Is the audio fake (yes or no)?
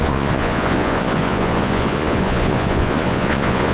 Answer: yes